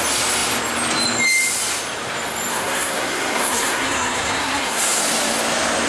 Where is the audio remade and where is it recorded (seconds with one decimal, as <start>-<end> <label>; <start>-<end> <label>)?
0.0-2.5 recorded; 2.5-5.0 remade; 5.0-5.9 recorded